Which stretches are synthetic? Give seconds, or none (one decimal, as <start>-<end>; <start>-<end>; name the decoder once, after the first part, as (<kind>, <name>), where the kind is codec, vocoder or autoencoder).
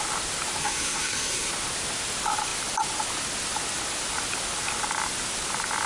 0.6-1.5 (codec, SNAC)